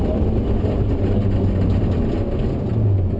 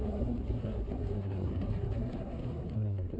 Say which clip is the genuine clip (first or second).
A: first